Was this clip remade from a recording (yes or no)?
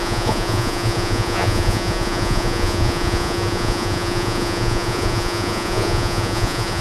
yes